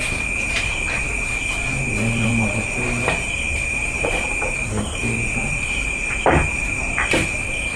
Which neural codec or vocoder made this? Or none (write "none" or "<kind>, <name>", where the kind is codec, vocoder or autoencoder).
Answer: vocoder, BigVGAN v2